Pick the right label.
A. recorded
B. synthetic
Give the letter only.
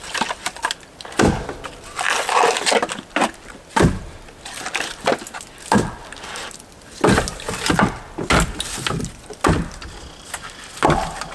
A